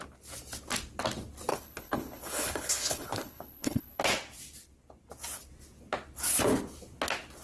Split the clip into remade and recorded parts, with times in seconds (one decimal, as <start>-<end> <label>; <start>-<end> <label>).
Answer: 0.0-1.5 recorded; 1.5-4.0 remade; 4.0-7.4 recorded